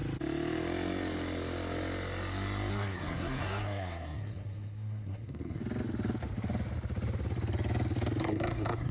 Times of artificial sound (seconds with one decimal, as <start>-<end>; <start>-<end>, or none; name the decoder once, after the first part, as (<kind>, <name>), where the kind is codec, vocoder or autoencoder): 2.7-5.6 (codec, SNAC); 8.2-8.9